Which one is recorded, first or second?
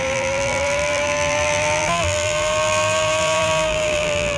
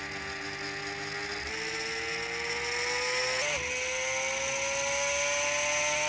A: second